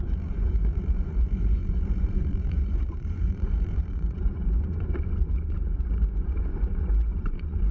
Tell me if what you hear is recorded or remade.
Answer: remade